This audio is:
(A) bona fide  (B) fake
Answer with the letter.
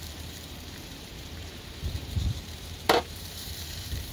B